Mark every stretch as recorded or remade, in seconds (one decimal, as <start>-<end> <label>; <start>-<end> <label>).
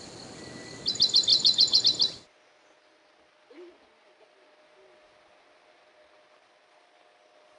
0.0-1.3 recorded; 1.3-1.8 remade; 1.8-7.6 recorded